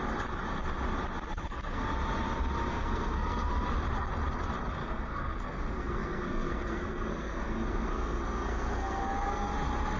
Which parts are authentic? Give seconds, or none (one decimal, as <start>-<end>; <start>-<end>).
0.0-1.3; 1.9-2.7; 3.5-4.8; 9.5-10.0